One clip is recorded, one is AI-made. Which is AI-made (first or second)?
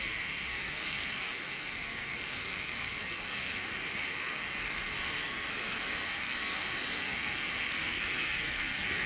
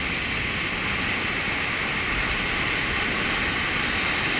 first